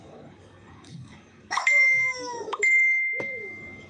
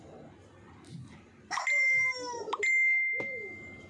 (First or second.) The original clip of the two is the second